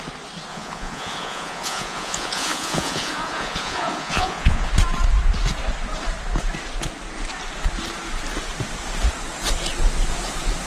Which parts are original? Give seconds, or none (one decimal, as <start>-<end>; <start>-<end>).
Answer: 0.0-0.5; 4.7-10.7